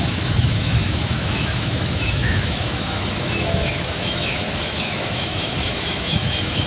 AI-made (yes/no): yes